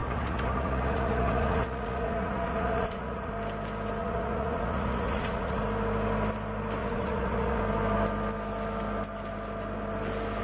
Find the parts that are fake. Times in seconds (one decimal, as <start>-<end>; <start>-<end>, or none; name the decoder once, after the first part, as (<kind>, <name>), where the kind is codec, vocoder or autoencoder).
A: 0.0-3.3 (vocoder, Vocos); 4.0-5.6; 6.8-7.6